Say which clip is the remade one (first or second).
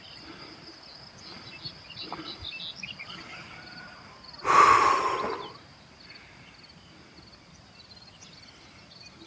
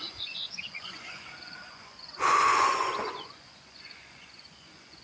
second